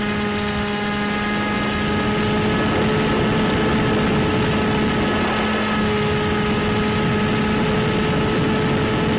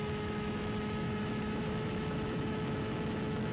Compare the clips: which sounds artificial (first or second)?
second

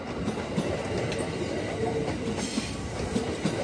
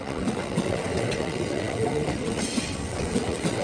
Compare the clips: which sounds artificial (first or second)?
second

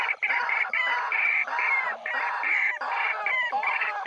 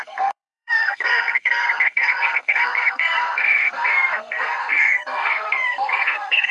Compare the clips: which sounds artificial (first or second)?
second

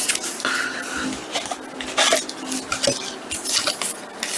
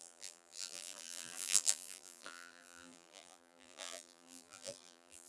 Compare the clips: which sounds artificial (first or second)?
second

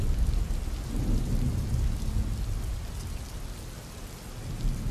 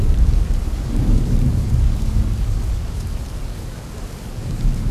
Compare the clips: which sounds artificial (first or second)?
second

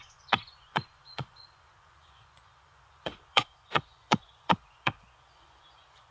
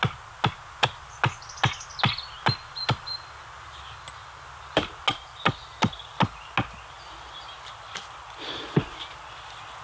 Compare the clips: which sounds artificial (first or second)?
first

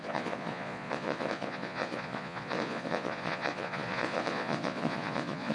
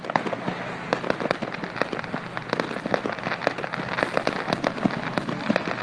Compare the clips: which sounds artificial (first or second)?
first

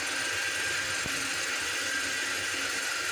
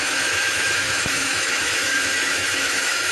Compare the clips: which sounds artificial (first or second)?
second